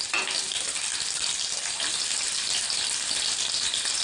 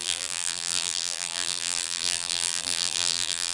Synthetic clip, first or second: second